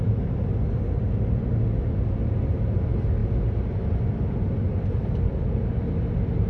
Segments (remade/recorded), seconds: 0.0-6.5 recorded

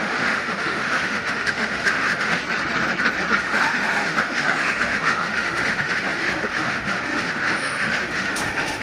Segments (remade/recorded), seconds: 0.0-2.4 remade; 2.4-3.4 recorded; 3.4-8.8 remade

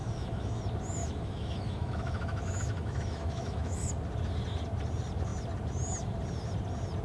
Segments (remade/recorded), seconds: 0.0-0.6 remade; 0.6-1.0 recorded; 1.0-3.9 remade; 3.9-7.0 recorded

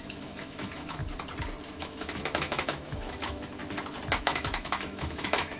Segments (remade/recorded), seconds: 0.0-1.0 remade; 1.0-1.7 recorded; 1.7-3.6 remade; 3.6-4.2 recorded; 4.2-5.6 remade

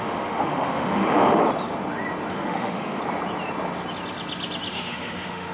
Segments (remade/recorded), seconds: 0.0-1.4 remade; 1.4-2.3 recorded; 2.3-3.0 remade; 3.0-4.7 recorded; 4.7-5.5 remade

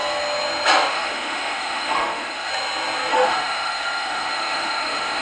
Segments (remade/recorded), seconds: 0.0-0.9 recorded; 0.9-2.5 remade; 2.5-3.1 recorded; 3.1-5.2 remade

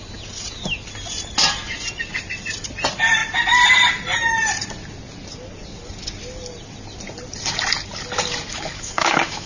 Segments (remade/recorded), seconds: 0.0-8.5 recorded; 8.5-9.5 remade

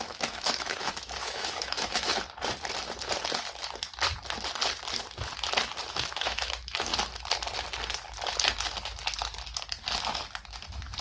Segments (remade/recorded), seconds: 0.0-2.1 remade; 2.1-5.9 recorded; 5.9-6.9 remade; 6.9-11.0 recorded